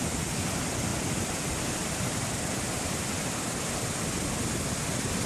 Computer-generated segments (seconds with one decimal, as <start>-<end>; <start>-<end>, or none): 0.9-3.1